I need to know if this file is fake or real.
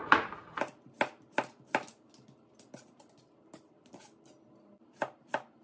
real